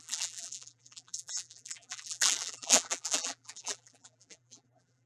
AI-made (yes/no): yes